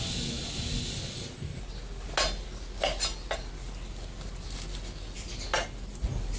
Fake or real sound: real